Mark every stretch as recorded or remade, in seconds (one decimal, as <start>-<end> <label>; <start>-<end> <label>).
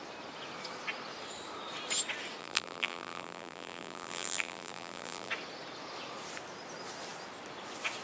0.0-2.4 recorded; 2.4-5.3 remade; 5.3-8.0 recorded